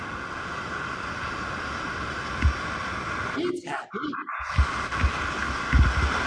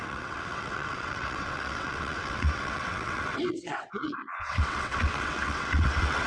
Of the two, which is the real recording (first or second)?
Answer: first